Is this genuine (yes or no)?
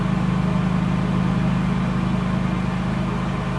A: yes